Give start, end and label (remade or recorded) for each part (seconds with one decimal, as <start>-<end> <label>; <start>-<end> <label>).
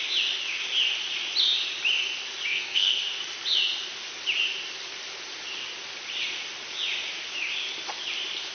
0.0-2.5 recorded; 2.5-3.2 remade; 3.2-8.5 recorded